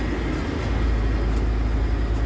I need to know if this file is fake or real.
real